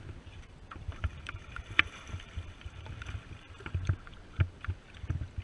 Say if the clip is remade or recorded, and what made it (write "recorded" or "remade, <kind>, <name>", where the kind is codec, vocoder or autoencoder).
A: remade, vocoder, BigVGAN v2